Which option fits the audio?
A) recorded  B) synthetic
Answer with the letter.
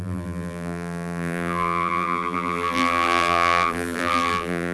B